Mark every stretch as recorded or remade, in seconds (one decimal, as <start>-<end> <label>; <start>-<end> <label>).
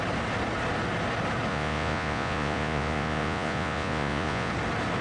0.0-1.5 recorded; 1.5-4.5 remade; 4.5-5.0 recorded